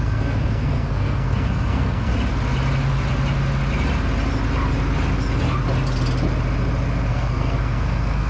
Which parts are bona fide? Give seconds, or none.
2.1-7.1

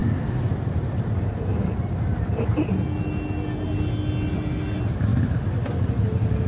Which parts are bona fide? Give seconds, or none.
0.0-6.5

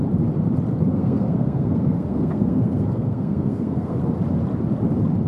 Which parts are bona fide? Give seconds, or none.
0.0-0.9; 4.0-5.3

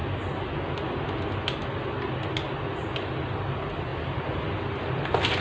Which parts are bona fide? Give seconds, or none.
0.0-5.4

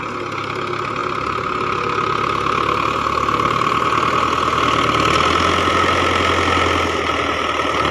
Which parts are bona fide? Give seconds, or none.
0.0-7.9